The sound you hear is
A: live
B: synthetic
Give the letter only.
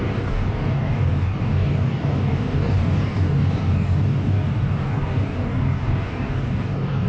B